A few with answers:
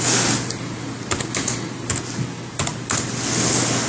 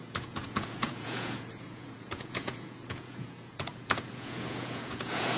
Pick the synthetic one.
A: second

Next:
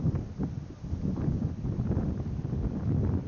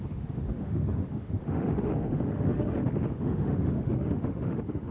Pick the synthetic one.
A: second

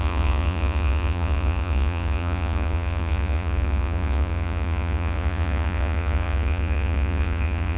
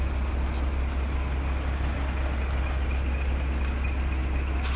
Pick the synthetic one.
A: first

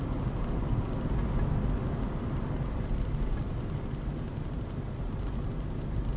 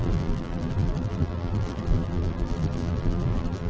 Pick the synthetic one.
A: second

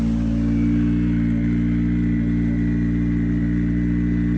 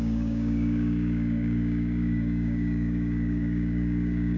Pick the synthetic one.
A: second